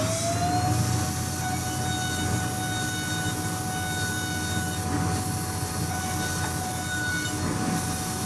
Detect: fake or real real